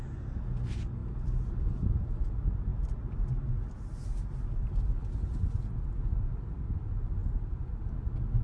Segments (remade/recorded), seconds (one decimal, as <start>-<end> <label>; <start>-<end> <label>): 0.0-1.0 recorded; 1.0-1.7 remade; 1.7-7.2 recorded; 7.2-7.8 remade; 7.8-8.4 recorded